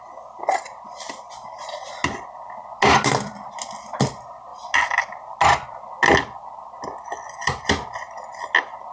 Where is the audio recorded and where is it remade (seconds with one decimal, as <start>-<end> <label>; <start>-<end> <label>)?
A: 0.0-8.9 recorded